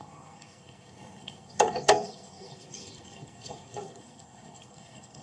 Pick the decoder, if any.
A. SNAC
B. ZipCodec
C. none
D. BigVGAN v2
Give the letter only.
A